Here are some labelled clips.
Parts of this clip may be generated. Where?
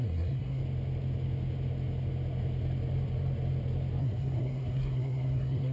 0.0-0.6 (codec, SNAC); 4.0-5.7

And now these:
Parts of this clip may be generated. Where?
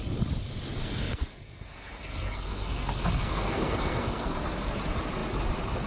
0.8-4.3 (codec, SNAC)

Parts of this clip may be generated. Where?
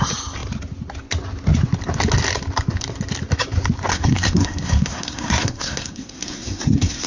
3.9-7.1 (codec, SNAC)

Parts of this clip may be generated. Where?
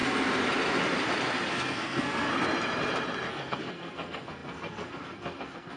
1.5-2.3 (codec, SNAC); 3.3-5.8